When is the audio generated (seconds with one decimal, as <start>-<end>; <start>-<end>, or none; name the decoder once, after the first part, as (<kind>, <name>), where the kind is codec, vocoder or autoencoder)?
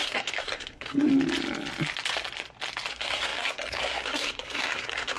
0.0-1.1 (codec, SNAC); 2.9-5.2